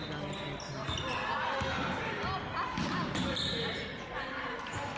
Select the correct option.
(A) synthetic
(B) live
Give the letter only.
B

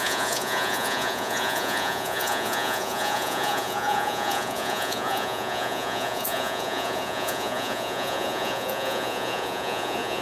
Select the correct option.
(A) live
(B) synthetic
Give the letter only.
B